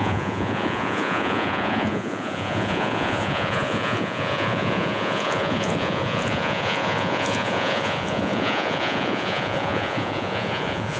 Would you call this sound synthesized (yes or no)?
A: yes